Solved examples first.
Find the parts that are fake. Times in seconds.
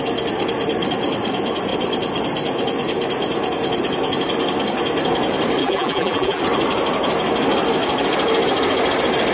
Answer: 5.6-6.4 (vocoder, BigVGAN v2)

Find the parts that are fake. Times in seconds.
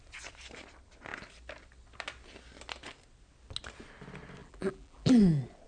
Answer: 4.4-5.2 (vocoder, BigVGAN v2)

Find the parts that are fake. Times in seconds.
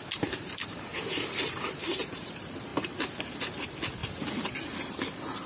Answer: 0.0-0.9 (vocoder, BigVGAN v2); 1.4-5.5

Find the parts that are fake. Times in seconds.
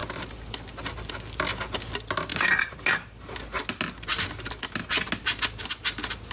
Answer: 0.0-1.1 (vocoder, BigVGAN v2); 2.3-2.9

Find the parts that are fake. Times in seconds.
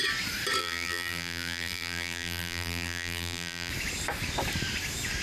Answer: 0.6-3.7 (vocoder, BigVGAN v2)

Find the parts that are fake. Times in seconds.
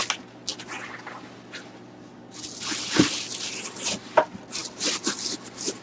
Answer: 4.6-5.3 (vocoder, BigVGAN v2)